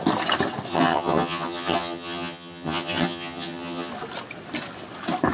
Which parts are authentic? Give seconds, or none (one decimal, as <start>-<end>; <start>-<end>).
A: 0.0-0.7; 3.9-5.3